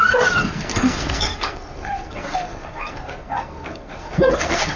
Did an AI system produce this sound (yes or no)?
yes